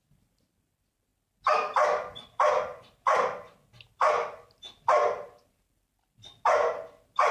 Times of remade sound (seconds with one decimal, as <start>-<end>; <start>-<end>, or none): none